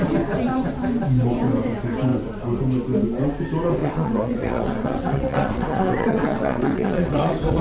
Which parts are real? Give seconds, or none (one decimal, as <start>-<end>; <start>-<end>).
0.0-3.8